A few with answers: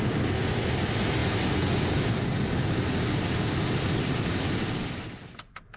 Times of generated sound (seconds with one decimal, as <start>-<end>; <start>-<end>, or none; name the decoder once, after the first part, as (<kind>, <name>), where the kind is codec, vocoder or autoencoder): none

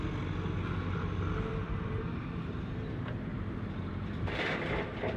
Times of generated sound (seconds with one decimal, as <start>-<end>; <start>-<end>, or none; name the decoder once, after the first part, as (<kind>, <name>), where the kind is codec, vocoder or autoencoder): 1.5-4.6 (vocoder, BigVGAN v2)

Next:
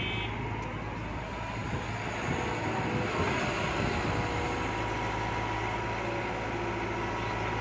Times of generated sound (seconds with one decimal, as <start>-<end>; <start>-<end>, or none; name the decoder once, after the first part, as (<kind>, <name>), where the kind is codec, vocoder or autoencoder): none

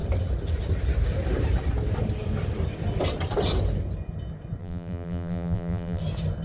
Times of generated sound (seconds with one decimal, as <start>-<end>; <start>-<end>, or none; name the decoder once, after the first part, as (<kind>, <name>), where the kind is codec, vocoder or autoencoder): 4.6-6.0 (vocoder, BigVGAN v2)

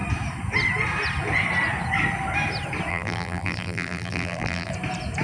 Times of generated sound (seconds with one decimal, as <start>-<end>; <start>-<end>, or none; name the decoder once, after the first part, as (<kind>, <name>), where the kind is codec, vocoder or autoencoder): 2.9-4.7 (vocoder, BigVGAN v2)

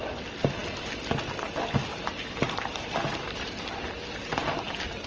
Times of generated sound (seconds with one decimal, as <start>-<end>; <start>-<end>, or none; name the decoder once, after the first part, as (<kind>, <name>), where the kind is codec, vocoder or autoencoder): 1.9-3.6 (vocoder, BigVGAN v2)

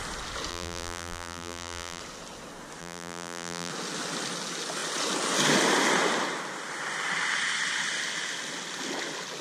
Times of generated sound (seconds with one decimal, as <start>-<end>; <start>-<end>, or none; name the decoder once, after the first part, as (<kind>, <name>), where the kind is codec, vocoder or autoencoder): 0.5-2.0 (vocoder, BigVGAN v2); 2.8-3.7

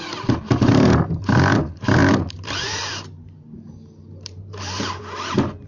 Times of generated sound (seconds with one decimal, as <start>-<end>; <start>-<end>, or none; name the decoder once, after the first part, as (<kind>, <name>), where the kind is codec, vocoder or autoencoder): 2.0-3.4 (vocoder, BigVGAN v2); 4.1-5.0